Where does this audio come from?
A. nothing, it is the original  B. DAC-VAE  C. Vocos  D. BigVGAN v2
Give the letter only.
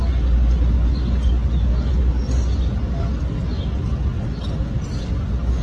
A